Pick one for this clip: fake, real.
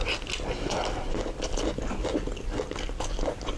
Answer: real